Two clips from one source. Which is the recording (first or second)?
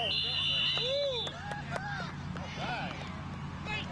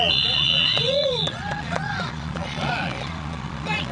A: first